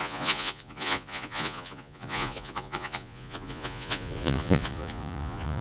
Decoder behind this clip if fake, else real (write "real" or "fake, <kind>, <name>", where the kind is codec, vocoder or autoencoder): fake, vocoder, Vocos